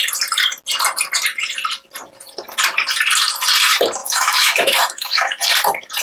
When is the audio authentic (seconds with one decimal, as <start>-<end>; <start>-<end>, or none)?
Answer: 0.0-4.0; 5.4-6.0